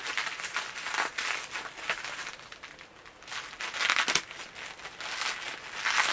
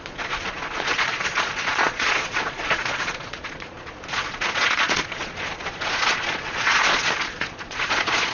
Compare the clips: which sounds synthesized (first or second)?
second